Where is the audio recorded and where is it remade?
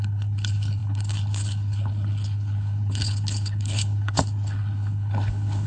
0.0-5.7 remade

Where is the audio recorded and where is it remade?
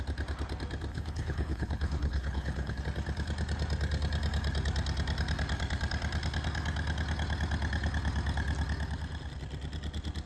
0.0-0.9 recorded; 0.9-2.8 remade; 2.8-10.3 recorded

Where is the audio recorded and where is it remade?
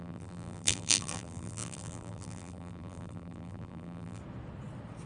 0.0-4.2 remade; 4.2-5.1 recorded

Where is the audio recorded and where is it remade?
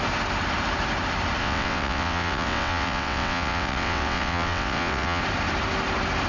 0.0-1.4 recorded; 1.4-5.2 remade; 5.2-6.3 recorded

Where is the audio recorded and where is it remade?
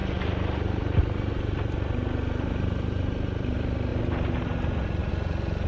0.0-5.7 recorded